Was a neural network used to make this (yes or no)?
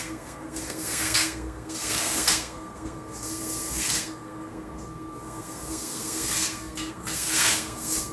yes